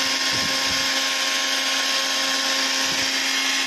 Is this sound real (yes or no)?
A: yes